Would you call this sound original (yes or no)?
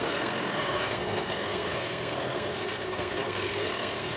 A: no